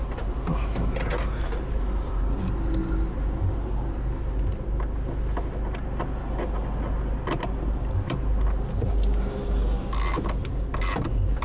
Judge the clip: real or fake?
real